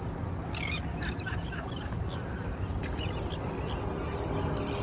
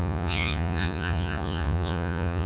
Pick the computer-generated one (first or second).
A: second